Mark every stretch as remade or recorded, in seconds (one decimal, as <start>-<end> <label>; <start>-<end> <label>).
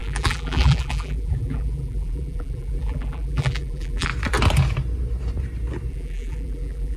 0.0-4.1 remade; 4.1-5.9 recorded; 5.9-7.0 remade